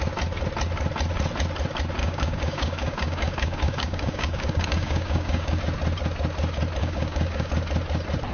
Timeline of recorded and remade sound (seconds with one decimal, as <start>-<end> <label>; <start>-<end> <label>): 0.0-2.0 recorded; 2.0-5.6 remade; 5.6-6.8 recorded; 6.8-7.5 remade; 7.5-8.3 recorded